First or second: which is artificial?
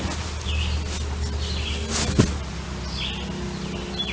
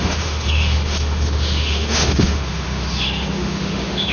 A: second